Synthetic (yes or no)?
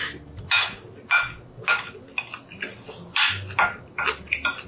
no